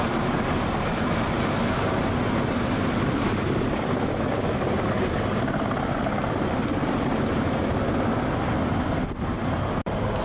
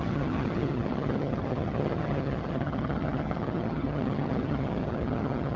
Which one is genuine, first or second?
first